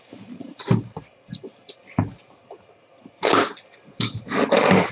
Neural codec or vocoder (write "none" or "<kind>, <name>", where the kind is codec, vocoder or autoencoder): none